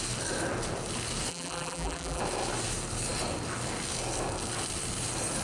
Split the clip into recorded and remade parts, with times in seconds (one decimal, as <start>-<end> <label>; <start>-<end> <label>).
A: 0.0-1.3 recorded; 1.3-2.2 remade; 2.2-5.4 recorded